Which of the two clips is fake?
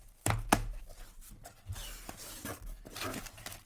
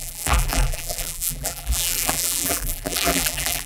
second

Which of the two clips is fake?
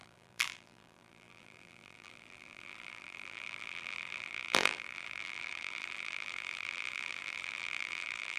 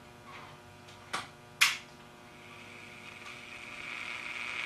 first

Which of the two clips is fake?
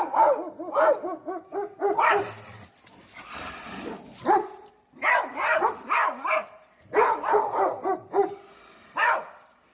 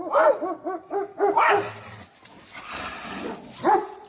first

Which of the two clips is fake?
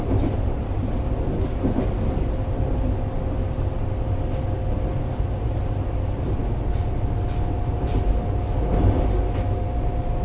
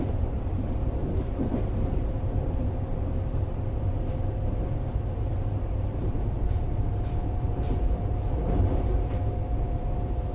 second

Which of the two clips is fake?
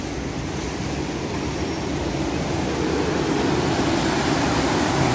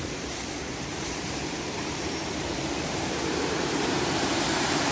second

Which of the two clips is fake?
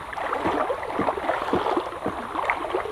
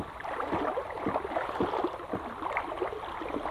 second